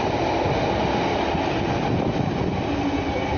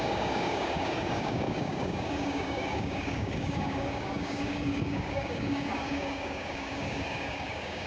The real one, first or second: first